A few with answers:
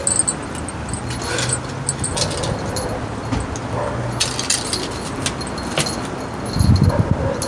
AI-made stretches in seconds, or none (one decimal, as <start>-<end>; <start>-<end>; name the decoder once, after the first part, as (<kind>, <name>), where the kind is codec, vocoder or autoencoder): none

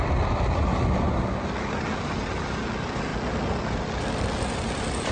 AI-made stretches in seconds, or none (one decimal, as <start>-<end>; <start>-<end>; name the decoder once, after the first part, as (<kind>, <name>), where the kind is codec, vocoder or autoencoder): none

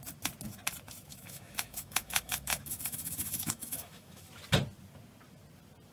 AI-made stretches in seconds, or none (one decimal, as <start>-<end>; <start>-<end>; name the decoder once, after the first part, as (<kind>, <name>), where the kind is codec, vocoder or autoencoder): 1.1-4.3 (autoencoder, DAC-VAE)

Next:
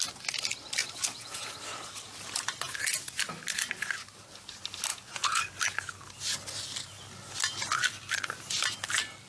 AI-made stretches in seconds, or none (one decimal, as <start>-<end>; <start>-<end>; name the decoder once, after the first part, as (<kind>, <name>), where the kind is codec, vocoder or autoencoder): 0.8-1.6 (vocoder, Vocos); 4.9-5.4

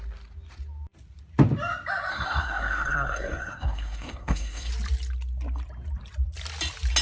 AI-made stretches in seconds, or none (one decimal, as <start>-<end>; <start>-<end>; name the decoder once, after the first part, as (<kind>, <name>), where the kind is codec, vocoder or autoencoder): 2.1-4.7 (codec, SNAC)

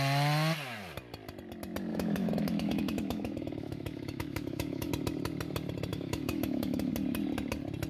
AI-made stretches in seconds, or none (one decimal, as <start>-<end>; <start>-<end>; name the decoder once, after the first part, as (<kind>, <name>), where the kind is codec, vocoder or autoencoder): 1.9-4.9 (autoencoder, DAC-VAE); 5.9-6.9

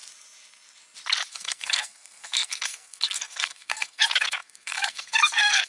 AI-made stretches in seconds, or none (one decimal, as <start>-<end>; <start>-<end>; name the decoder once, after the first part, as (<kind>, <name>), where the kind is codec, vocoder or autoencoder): 1.3-5.7 (codec, SNAC)

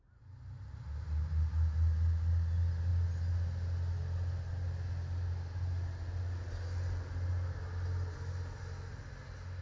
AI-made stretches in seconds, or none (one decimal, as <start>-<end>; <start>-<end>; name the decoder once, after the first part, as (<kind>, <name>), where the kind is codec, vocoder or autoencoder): none